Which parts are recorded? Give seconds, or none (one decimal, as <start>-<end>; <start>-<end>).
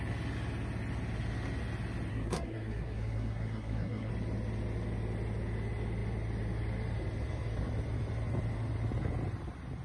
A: 0.0-2.1; 4.1-9.8